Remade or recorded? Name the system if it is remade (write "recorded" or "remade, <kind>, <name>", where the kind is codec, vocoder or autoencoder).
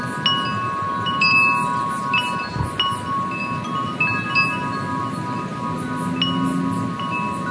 recorded